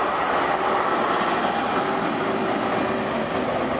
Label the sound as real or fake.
real